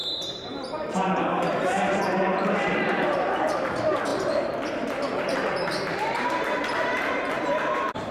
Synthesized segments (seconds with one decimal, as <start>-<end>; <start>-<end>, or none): 0.0-8.1